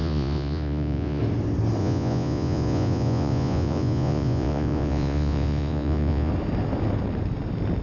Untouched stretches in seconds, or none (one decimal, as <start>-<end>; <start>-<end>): 1.2-1.8; 6.3-7.8